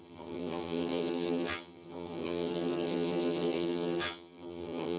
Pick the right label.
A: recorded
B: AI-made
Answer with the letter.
B